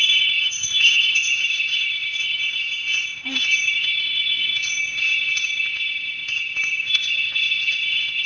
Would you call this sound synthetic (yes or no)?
yes